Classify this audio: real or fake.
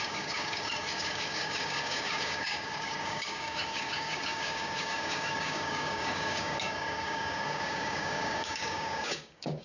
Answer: fake